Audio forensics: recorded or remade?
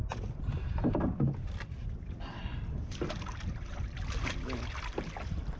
recorded